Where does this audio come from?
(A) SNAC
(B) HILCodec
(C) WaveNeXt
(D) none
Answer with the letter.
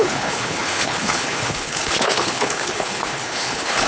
B